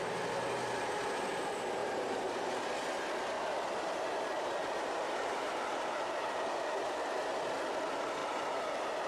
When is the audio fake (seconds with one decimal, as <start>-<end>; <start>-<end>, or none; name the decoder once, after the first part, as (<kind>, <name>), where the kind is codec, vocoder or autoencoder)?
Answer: 1.8-2.3 (vocoder, BigVGAN v2); 4.6-6.3; 8.2-8.7